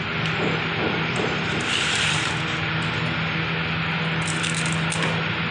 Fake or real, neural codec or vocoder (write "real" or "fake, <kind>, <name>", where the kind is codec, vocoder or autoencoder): real